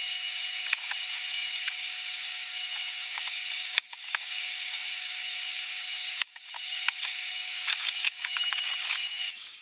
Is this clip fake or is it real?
fake